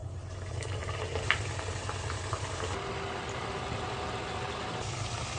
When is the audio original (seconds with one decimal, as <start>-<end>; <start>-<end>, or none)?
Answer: 0.0-5.4